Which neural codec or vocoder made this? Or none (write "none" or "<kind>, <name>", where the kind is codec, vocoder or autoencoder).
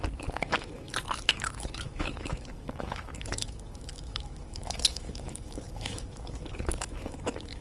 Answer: autoencoder, DAC-VAE